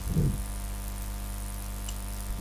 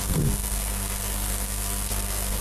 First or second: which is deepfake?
second